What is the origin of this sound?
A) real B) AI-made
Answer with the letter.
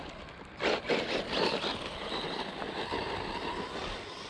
A